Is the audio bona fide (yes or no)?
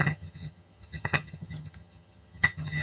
no